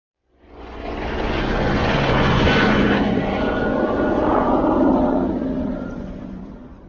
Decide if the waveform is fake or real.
fake